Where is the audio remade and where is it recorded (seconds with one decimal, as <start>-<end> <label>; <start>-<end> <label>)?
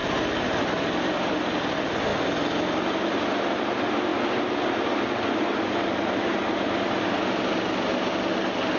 0.0-8.8 recorded